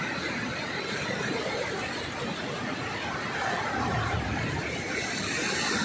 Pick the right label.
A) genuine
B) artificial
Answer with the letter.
A